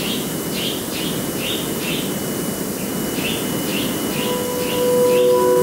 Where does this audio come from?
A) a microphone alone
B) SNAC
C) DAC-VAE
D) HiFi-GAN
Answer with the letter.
A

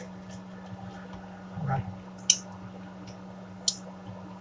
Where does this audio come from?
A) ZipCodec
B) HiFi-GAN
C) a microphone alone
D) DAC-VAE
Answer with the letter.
C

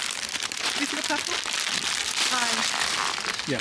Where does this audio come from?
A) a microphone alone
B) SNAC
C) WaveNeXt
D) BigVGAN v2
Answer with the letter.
A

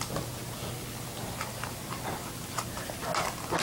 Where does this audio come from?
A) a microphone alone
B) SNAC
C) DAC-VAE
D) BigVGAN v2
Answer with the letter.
A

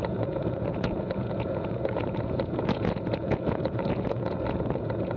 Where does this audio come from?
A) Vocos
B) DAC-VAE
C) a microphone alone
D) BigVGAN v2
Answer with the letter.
A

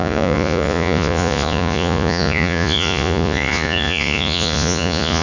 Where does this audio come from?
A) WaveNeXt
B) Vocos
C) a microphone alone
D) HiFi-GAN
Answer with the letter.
B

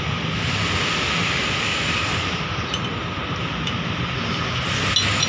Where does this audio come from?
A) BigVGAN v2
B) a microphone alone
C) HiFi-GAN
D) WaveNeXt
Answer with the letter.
B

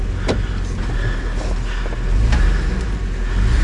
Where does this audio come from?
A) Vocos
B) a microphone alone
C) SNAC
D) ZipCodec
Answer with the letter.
B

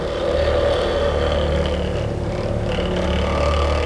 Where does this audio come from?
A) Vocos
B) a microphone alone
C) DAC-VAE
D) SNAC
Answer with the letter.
B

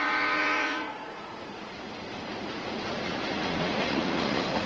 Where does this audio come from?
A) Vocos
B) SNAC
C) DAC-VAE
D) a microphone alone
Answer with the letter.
A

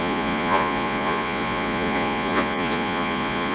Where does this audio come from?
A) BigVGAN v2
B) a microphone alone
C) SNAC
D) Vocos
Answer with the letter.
D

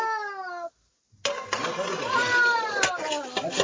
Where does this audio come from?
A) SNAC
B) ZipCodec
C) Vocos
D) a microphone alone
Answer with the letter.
D